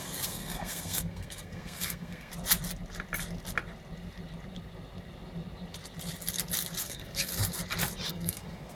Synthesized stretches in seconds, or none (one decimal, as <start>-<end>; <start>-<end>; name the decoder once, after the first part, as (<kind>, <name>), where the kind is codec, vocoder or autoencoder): 0.0-2.3 (codec, SNAC); 6.8-7.3; 8.1-8.7